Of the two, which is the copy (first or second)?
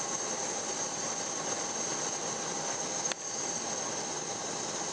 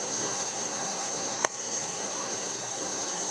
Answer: second